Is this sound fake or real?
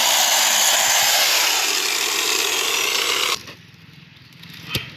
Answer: real